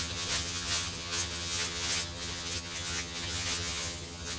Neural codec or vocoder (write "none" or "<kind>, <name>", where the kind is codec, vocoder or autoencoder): vocoder, HiFi-GAN